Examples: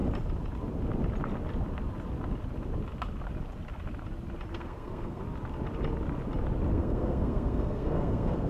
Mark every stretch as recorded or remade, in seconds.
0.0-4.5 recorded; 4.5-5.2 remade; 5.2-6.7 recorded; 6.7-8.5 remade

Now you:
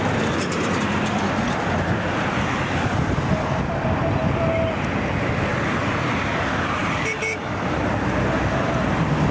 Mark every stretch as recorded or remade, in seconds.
0.0-9.3 recorded

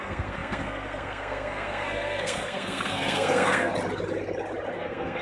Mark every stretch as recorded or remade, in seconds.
0.0-3.7 remade; 3.7-4.7 recorded; 4.7-5.2 remade

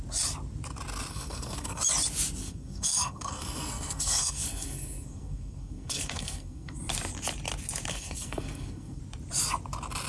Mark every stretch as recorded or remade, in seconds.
0.0-1.1 recorded; 1.1-1.8 remade; 1.8-2.4 recorded; 2.4-6.8 remade; 6.8-7.9 recorded; 7.9-9.0 remade; 9.0-10.1 recorded

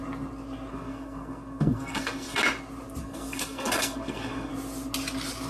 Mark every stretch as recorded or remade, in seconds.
0.0-0.7 recorded; 0.7-2.4 remade; 2.4-3.0 recorded; 3.0-4.5 remade; 4.5-5.5 recorded

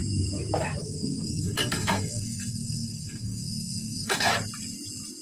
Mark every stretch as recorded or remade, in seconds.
0.0-0.8 recorded; 0.8-4.3 remade; 4.3-5.2 recorded

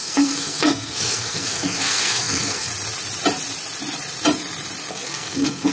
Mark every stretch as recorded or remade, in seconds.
0.0-2.7 remade; 2.7-4.9 recorded; 4.9-5.7 remade